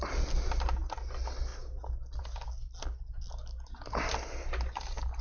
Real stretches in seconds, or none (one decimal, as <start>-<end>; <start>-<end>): 0.0-5.2